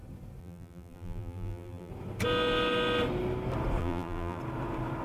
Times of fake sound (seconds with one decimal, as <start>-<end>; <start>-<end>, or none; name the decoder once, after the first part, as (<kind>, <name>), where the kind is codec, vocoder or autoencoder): 0.4-1.9 (vocoder, BigVGAN v2); 3.8-4.4